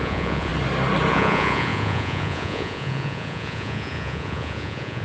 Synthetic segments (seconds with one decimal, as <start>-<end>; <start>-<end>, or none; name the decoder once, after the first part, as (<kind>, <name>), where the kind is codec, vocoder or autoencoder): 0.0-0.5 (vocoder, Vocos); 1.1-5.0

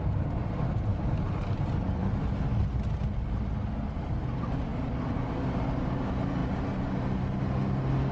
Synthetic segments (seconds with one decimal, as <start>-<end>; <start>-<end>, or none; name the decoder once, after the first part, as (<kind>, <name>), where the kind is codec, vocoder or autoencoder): none

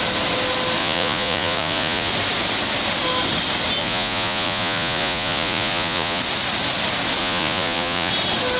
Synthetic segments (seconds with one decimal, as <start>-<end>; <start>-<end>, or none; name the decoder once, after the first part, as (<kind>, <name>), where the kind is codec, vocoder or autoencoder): 0.8-2.1 (vocoder, Vocos); 3.8-6.2; 7.2-8.1

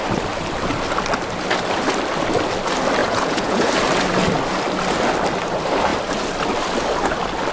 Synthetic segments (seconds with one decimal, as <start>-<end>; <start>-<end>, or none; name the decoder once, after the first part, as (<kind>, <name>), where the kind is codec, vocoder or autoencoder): 3.0-3.7 (vocoder, Vocos)